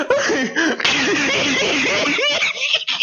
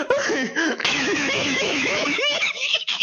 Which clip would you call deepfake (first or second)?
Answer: second